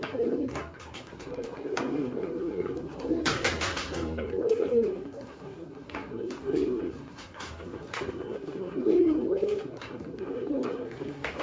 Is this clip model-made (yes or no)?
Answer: yes